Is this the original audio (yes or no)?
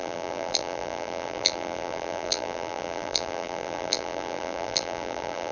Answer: no